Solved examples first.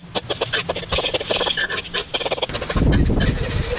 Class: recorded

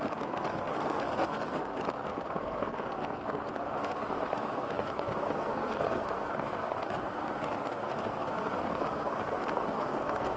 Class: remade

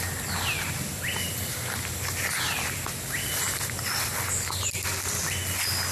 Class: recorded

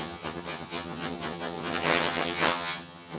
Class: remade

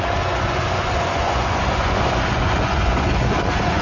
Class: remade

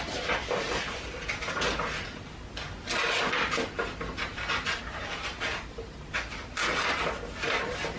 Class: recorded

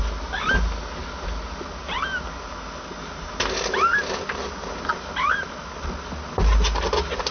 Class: recorded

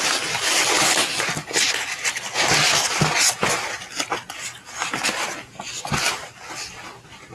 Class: recorded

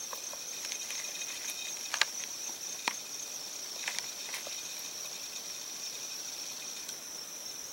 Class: recorded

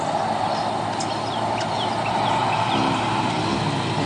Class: recorded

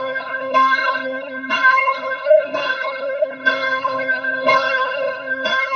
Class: remade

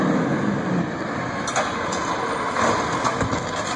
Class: recorded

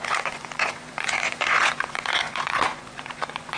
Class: remade